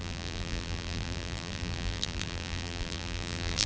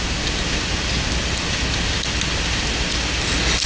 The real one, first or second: second